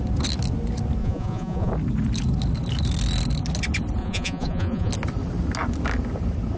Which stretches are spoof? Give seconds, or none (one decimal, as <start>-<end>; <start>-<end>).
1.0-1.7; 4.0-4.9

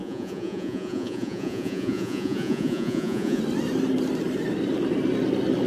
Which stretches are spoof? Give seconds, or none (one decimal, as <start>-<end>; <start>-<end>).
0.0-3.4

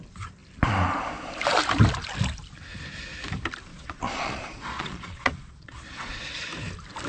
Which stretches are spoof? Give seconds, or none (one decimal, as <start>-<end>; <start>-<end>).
3.7-6.2